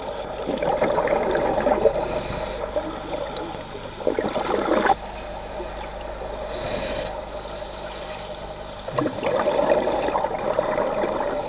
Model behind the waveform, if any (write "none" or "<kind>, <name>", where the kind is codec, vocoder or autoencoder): none